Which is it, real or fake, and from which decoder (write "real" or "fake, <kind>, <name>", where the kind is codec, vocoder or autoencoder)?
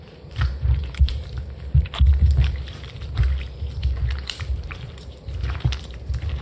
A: fake, vocoder, BigVGAN v2